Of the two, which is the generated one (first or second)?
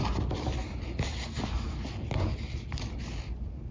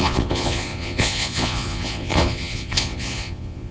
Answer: second